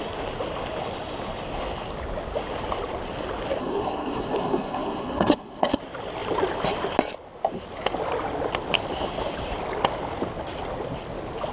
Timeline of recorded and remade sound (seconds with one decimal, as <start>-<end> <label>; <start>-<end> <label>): 0.0-3.6 recorded; 3.6-5.8 remade; 5.8-11.5 recorded